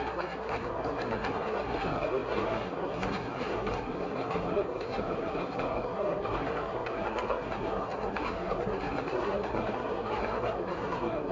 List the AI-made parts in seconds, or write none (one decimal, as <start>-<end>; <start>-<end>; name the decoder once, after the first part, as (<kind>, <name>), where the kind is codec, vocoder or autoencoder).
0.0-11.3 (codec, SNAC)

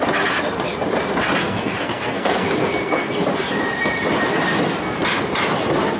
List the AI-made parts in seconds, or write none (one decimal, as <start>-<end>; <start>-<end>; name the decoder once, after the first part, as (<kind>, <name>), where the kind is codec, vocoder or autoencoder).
1.4-3.1 (codec, SNAC)

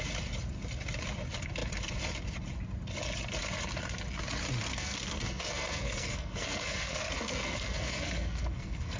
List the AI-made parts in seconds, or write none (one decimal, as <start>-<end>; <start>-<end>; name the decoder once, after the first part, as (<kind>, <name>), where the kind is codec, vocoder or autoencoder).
4.7-9.0 (codec, SNAC)

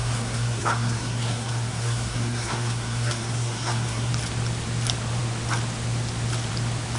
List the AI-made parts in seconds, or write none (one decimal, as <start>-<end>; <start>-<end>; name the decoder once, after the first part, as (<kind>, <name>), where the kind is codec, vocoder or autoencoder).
0.0-4.1 (codec, SNAC)

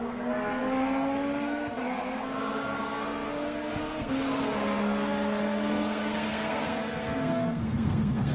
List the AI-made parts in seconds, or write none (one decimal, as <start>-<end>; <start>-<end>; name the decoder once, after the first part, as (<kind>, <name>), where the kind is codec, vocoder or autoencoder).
0.0-8.3 (codec, SNAC)

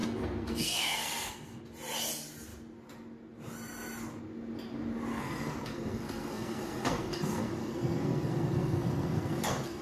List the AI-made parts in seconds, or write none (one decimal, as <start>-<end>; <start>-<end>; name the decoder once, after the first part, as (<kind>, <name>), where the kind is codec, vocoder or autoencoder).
0.0-1.6 (codec, SNAC); 5.1-9.8